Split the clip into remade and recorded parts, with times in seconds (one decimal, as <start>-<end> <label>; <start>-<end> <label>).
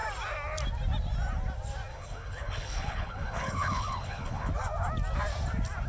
0.0-1.9 recorded; 1.9-4.5 remade; 4.5-5.9 recorded